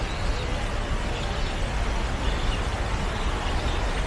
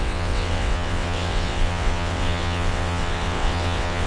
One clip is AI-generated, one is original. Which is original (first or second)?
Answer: first